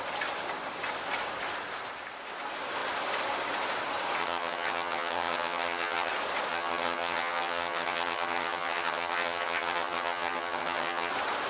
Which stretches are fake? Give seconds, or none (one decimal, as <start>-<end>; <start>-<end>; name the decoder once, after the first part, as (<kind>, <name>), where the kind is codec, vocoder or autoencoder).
4.2-6.1 (vocoder, HiFi-GAN); 6.5-11.1